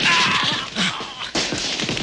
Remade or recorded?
recorded